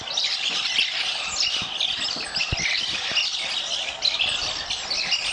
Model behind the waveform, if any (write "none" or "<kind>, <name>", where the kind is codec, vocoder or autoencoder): none